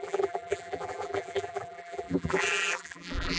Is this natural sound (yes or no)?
no